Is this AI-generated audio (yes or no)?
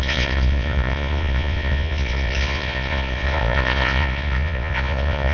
yes